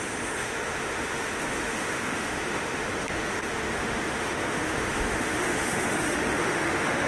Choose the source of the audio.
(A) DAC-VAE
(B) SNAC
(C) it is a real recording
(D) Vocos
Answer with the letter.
A